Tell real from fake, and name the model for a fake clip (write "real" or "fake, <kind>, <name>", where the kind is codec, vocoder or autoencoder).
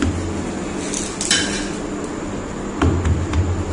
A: real